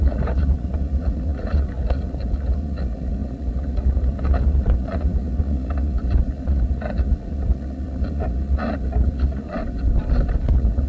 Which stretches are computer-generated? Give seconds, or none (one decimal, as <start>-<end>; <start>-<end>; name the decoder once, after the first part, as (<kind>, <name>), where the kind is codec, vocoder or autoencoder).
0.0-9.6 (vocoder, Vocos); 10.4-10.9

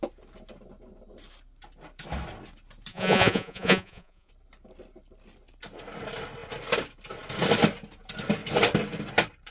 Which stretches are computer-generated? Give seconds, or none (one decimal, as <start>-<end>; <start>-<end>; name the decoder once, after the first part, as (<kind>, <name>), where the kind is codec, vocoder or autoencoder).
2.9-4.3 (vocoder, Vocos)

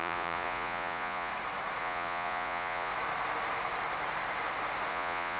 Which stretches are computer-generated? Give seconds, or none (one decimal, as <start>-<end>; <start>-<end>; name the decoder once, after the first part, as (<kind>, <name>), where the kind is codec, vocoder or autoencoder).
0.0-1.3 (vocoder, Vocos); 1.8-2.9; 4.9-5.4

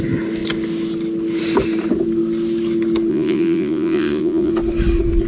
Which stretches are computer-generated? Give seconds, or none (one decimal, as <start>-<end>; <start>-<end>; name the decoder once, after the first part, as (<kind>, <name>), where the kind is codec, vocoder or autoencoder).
3.1-4.5 (vocoder, Vocos)